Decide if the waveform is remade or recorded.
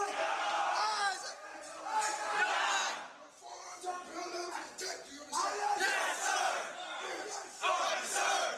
recorded